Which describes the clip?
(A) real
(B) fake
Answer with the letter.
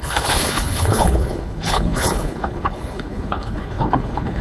B